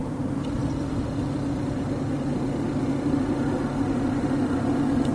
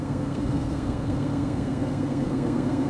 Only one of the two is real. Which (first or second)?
first